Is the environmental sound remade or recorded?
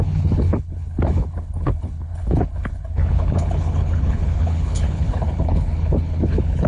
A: remade